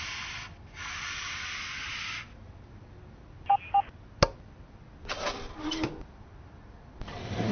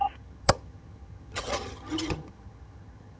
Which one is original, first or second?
first